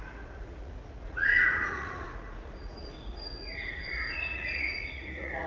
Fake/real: fake